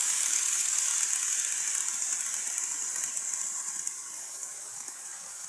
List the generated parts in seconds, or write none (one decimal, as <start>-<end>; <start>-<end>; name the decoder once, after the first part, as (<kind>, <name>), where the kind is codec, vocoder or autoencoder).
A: 0.0-0.9 (codec, DAC); 4.2-5.5